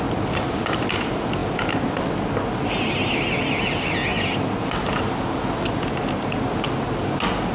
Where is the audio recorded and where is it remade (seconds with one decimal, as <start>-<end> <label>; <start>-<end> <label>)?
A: 0.0-7.5 recorded